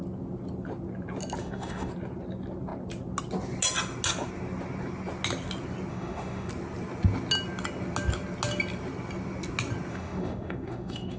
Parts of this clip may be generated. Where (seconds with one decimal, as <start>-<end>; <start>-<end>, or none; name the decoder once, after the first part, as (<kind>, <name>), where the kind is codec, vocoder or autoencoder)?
1.4-1.9 (autoencoder, DAC-VAE); 5.9-6.5; 9.9-11.2